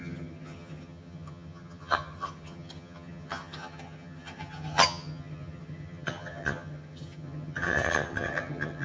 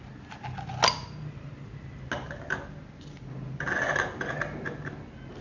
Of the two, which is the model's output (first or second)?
first